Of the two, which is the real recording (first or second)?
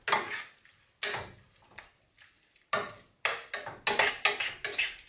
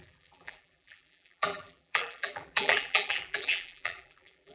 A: first